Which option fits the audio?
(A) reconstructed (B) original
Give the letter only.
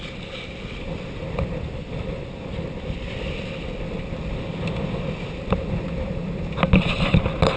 B